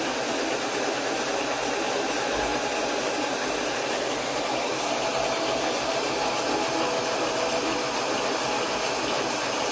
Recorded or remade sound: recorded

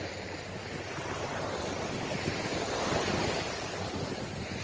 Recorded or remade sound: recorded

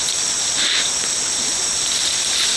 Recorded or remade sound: recorded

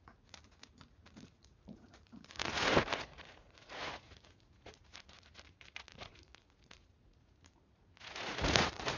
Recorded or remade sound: remade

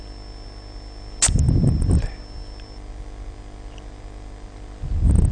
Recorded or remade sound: recorded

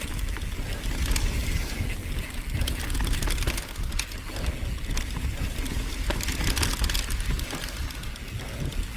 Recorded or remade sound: recorded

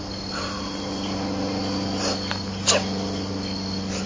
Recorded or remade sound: recorded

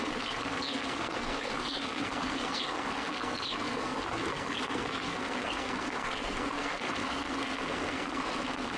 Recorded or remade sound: remade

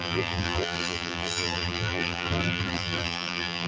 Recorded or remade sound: remade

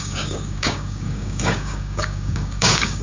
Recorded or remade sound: remade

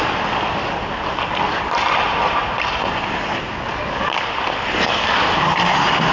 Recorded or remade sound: recorded